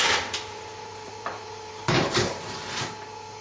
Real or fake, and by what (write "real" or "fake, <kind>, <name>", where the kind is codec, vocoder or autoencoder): fake, vocoder, BigVGAN v2